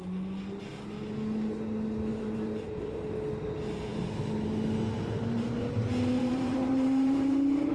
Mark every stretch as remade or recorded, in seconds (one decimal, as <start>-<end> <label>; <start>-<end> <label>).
0.0-2.1 recorded; 2.1-3.0 remade; 3.0-6.2 recorded; 6.2-7.7 remade